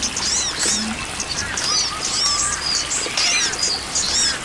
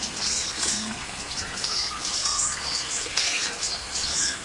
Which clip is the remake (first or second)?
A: second